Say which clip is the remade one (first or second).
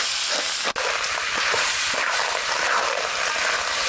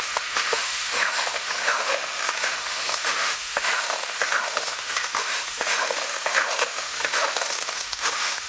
second